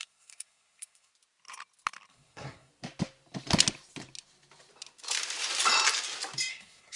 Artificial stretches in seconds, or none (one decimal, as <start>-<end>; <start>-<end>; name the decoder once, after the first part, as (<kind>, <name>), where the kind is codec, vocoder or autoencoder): 0.0-1.1 (codec, SNAC); 2.1-2.7; 6.5-7.0